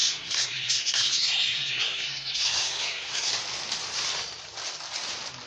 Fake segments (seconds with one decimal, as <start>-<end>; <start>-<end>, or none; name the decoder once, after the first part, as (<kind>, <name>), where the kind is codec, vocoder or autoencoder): 0.0-3.3 (codec, SNAC)